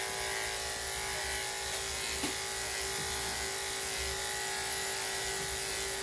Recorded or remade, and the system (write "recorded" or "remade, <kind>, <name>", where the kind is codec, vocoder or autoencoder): recorded